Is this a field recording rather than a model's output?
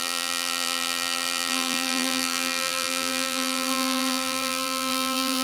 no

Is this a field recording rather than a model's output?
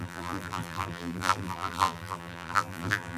no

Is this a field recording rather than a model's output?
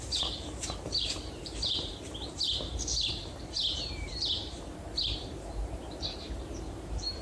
no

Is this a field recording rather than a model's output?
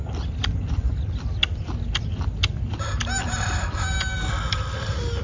yes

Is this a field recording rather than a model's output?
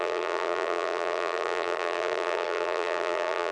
no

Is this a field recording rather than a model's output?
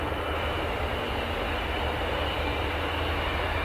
yes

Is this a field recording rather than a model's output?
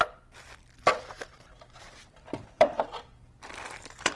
no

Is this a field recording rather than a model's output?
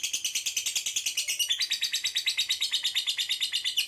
yes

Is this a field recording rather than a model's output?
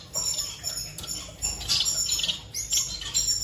yes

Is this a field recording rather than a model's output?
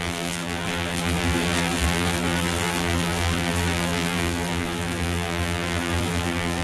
no